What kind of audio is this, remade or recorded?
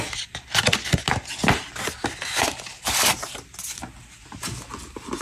recorded